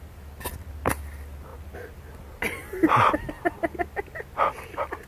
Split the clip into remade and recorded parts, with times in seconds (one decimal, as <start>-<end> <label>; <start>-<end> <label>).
0.0-5.1 recorded